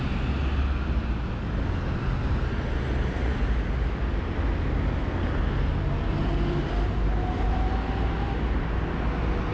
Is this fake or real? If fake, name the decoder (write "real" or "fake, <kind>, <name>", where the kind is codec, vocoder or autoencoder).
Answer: real